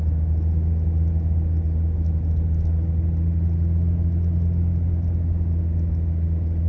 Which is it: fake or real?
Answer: real